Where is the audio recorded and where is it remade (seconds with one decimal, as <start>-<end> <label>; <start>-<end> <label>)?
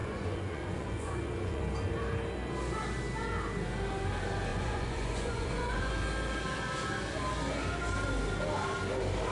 0.0-1.6 remade; 1.6-4.5 recorded; 4.5-5.9 remade; 5.9-9.3 recorded